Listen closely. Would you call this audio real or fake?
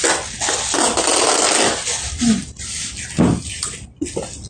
real